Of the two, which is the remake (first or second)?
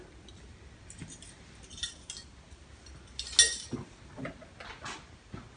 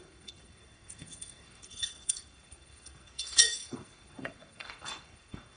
second